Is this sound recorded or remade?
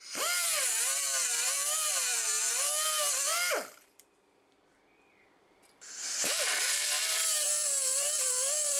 remade